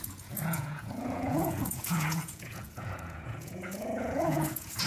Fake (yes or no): yes